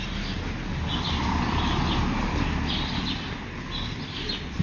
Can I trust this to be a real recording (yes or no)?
yes